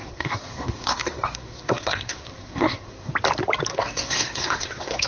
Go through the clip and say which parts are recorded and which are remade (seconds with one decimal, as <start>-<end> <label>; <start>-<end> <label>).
0.0-3.1 remade; 3.1-3.7 recorded; 3.7-5.1 remade